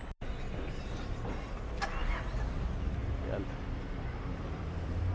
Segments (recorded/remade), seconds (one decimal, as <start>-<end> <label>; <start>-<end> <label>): 0.0-3.0 recorded; 3.0-5.1 remade